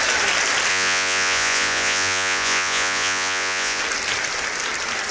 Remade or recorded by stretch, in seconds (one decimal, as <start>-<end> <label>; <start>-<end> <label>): 0.0-0.7 recorded; 0.7-3.8 remade; 3.8-5.1 recorded